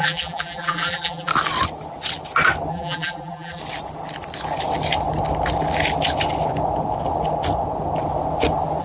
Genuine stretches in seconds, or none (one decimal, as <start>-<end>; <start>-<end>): 1.3-2.7; 3.6-8.8